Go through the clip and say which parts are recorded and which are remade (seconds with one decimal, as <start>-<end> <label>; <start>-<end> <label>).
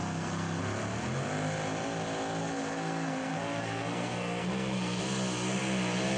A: 0.0-0.6 remade; 0.6-2.4 recorded; 2.4-5.0 remade; 5.0-6.2 recorded